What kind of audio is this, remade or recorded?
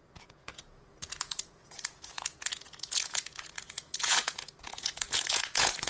remade